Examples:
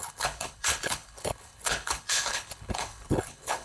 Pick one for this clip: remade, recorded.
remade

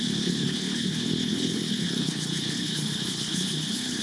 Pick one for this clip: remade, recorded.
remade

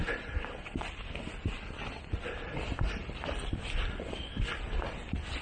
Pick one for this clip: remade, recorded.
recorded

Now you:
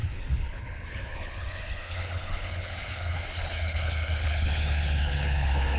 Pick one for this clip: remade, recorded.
remade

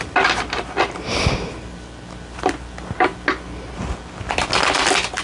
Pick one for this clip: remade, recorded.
recorded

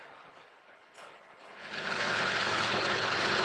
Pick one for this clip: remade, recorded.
remade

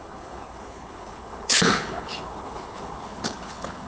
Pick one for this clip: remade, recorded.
remade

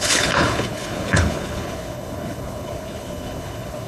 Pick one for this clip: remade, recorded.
remade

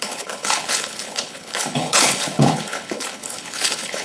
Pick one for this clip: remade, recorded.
remade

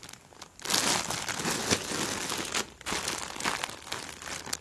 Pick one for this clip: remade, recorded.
recorded